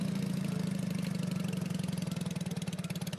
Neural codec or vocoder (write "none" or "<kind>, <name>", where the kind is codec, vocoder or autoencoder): vocoder, BigVGAN v2